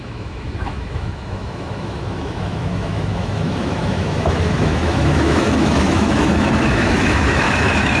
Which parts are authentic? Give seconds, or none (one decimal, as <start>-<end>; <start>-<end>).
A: none